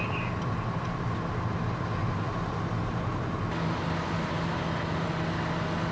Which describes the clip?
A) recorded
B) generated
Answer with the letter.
A